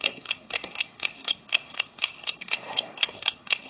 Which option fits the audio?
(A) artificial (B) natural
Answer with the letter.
A